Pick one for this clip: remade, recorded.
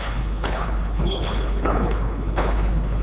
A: remade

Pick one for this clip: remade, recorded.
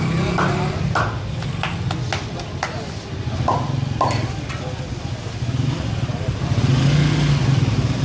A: recorded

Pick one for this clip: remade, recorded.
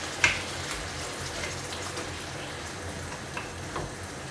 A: recorded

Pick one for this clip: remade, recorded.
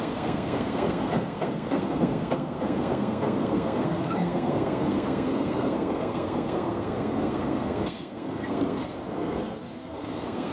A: remade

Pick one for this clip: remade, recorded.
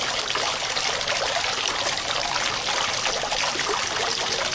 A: recorded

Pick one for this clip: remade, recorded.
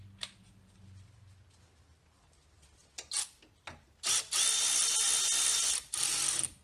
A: recorded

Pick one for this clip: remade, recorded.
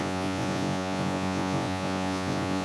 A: remade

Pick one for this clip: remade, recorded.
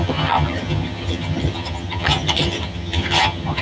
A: remade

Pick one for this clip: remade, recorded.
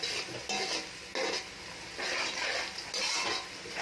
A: recorded